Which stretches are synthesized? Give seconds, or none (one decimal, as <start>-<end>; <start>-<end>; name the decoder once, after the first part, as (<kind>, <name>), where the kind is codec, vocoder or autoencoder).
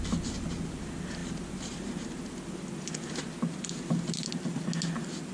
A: none